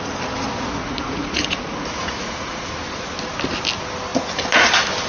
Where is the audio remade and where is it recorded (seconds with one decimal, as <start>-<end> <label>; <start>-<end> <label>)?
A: 0.0-0.8 recorded; 0.8-2.7 remade; 2.7-5.1 recorded